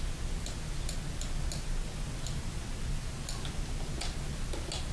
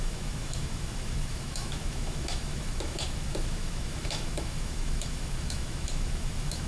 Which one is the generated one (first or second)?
second